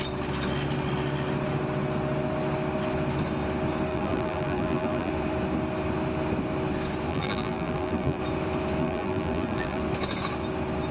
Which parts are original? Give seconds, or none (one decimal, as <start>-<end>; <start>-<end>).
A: 0.0-3.9; 5.1-7.1; 8.2-8.8; 9.8-10.9